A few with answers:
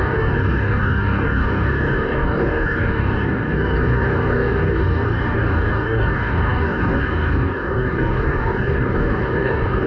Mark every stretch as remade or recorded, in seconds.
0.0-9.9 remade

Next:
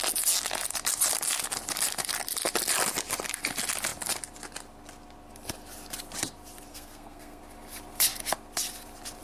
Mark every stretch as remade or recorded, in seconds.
0.0-6.7 recorded; 6.7-7.4 remade; 7.4-9.2 recorded

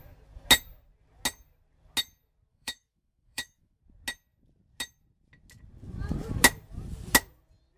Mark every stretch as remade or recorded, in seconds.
0.0-2.5 recorded; 2.5-3.8 remade; 3.8-7.8 recorded

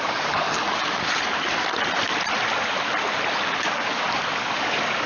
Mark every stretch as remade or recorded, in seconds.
0.0-0.5 remade; 0.5-3.6 recorded; 3.6-5.1 remade

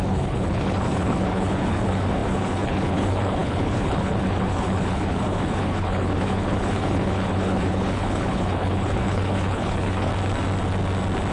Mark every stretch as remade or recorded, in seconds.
0.0-10.1 remade; 10.1-11.3 recorded